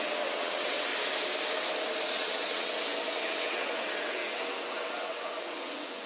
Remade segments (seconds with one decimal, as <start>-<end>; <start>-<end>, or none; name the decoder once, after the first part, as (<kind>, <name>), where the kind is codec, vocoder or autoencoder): 0.0-0.9 (vocoder, WaveNeXt); 2.1-6.1